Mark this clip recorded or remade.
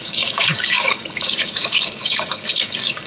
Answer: remade